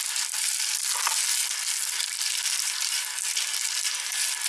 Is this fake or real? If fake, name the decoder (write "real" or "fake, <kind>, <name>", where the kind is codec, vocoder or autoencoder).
real